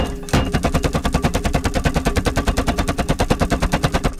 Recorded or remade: recorded